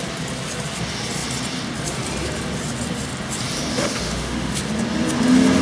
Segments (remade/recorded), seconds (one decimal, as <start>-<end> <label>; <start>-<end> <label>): 0.0-3.7 recorded; 3.7-4.5 remade; 4.5-5.6 recorded